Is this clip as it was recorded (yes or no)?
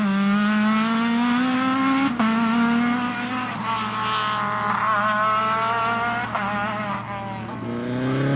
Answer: yes